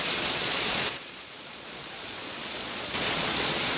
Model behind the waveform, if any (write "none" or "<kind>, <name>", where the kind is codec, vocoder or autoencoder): vocoder, Vocos